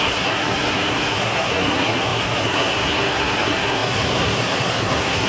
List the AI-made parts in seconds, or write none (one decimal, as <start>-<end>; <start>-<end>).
0.0-5.3